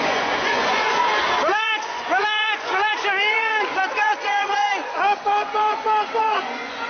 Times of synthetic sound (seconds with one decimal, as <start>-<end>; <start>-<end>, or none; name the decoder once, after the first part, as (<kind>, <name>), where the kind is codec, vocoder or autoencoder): 0.0-1.0 (vocoder, Vocos); 1.5-6.9